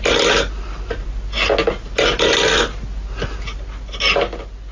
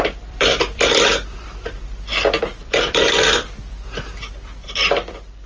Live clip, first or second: first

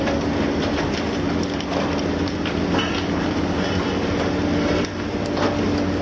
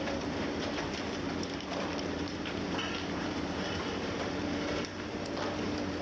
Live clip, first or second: first